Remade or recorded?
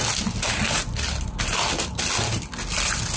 recorded